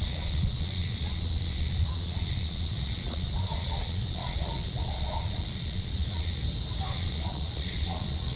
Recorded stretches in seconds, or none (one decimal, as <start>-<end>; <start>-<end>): 6.4-6.9